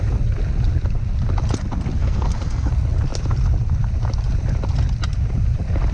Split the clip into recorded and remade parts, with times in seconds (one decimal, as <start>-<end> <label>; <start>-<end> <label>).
0.0-2.0 recorded; 2.0-2.7 remade; 2.7-5.9 recorded